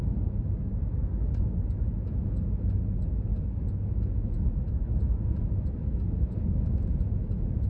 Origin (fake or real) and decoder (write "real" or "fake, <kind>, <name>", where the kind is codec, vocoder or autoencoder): fake, autoencoder, DAC-VAE